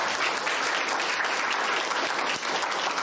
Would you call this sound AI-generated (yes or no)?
no